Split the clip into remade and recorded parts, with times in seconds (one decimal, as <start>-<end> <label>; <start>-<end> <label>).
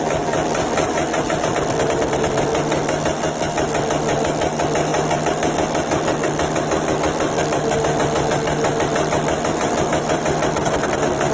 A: 0.0-11.3 recorded